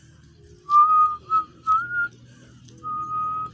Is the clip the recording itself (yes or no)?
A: yes